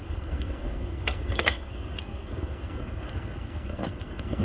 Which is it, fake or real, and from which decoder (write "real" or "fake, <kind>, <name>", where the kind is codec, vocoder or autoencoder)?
fake, codec, SNAC